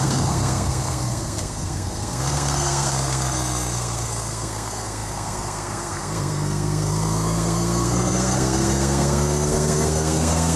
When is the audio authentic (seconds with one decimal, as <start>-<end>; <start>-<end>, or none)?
none